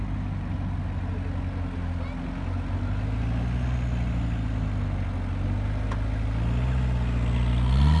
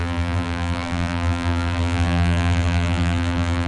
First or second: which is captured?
first